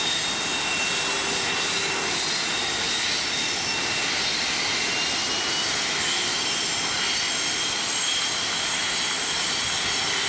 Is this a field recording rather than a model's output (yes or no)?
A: yes